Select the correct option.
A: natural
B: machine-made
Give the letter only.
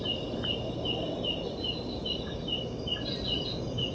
A